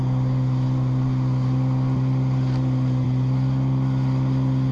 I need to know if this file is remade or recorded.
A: recorded